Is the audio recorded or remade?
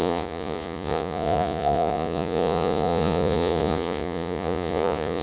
remade